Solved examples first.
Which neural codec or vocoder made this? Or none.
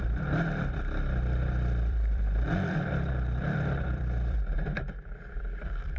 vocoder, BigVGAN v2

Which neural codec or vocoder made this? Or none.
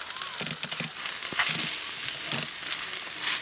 none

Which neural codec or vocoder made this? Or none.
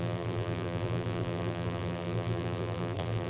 vocoder, BigVGAN v2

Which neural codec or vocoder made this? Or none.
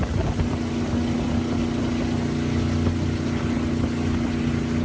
none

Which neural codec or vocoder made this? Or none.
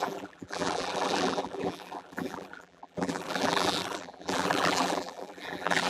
vocoder, BigVGAN v2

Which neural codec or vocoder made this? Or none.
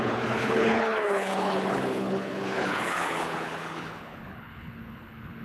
codec, HILCodec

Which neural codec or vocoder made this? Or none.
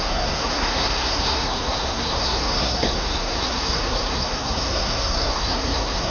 codec, SNAC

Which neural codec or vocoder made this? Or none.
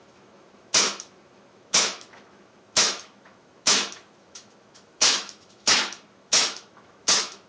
autoencoder, DAC-VAE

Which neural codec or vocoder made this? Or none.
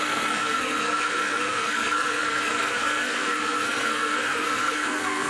codec, SNAC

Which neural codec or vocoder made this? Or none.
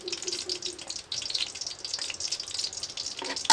none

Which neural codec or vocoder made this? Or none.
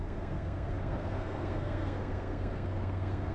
codec, SNAC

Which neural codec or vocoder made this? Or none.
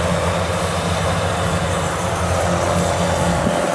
none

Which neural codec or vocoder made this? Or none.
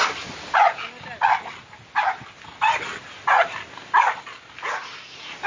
none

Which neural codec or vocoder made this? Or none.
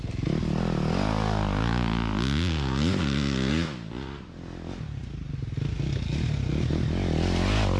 none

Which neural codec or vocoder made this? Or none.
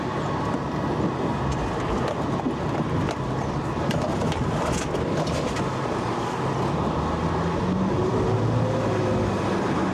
none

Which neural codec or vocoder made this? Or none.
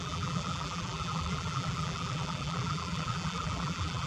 vocoder, BigVGAN v2